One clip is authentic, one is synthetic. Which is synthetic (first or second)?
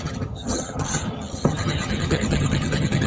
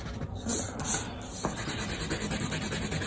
first